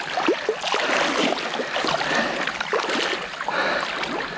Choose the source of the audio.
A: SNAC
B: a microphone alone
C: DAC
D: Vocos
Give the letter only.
B